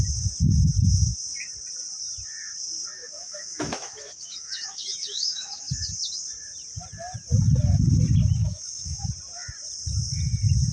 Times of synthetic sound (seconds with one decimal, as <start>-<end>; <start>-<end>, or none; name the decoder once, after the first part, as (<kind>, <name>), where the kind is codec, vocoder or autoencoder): 3.0-5.7 (autoencoder, DAC-VAE); 8.4-9.1